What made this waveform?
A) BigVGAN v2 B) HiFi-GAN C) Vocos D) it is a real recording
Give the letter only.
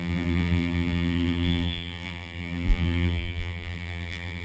A